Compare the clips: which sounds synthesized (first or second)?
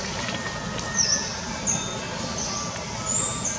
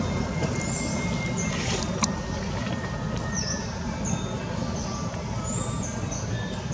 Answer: second